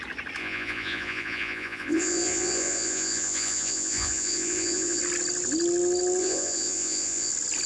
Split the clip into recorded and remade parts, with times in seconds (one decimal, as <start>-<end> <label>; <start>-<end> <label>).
0.0-0.4 recorded; 0.4-5.0 remade; 5.0-6.2 recorded; 6.2-7.3 remade; 7.3-7.7 recorded